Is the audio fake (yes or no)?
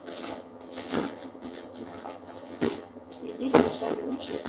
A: yes